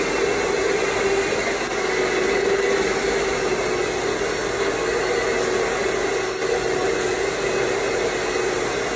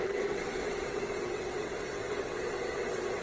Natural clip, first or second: first